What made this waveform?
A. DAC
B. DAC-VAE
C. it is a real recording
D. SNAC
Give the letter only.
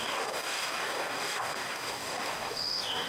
A